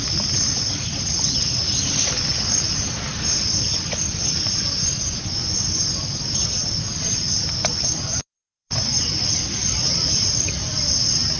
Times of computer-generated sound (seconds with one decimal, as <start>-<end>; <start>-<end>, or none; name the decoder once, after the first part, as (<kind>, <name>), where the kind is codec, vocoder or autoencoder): 4.8-6.0 (vocoder, Vocos); 7.6-9.0

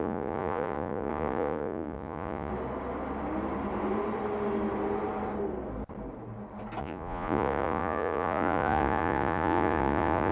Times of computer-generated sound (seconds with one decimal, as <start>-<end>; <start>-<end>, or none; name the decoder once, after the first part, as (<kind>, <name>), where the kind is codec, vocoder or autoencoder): 0.0-2.5 (vocoder, Vocos); 6.8-10.3

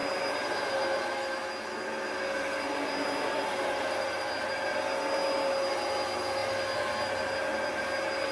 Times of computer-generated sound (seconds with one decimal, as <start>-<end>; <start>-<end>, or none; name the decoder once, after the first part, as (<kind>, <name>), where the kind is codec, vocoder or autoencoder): none

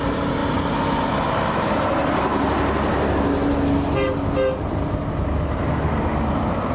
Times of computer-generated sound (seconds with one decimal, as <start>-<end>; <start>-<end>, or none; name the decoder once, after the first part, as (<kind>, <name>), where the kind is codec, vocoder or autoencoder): none

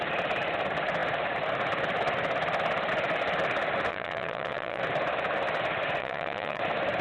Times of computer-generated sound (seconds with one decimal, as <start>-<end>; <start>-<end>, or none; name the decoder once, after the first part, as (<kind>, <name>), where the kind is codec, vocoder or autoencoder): 3.9-4.8 (vocoder, Vocos); 6.0-6.6